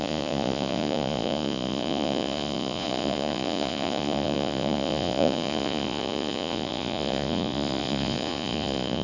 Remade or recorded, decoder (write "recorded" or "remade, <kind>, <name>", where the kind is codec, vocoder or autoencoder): remade, vocoder, Vocos